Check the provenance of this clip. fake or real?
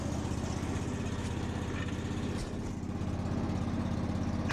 real